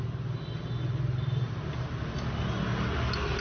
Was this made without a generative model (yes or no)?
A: yes